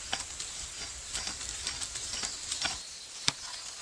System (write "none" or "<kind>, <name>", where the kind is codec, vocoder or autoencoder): none